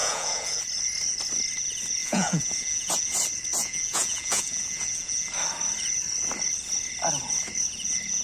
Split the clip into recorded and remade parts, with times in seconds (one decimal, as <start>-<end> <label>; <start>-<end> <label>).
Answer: 0.0-0.6 remade; 0.6-2.0 recorded; 2.0-3.1 remade; 3.1-3.6 recorded; 3.6-5.3 remade; 5.3-8.2 recorded